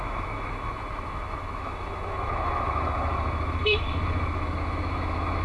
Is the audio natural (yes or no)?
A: no